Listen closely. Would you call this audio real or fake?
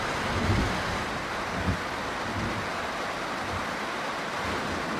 real